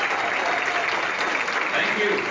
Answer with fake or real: real